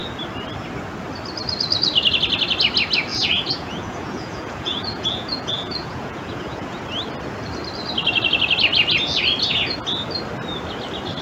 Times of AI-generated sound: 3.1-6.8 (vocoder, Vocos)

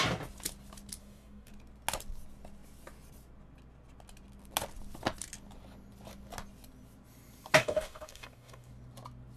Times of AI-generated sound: 1.0-1.5 (codec, DAC); 7.6-8.7

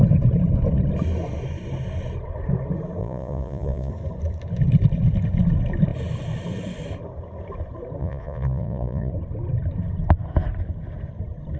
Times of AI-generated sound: 3.0-3.9 (vocoder, Vocos); 8.0-9.1

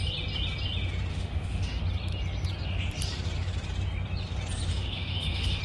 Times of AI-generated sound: 1.1-1.8 (autoencoder, DAC-VAE); 4.7-5.6

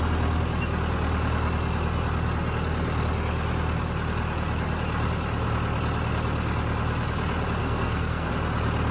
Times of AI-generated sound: 7.6-8.3 (codec, SNAC)

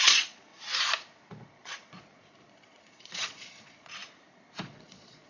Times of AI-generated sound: 0.0-0.5 (vocoder, Vocos); 1.3-4.0; 4.6-5.3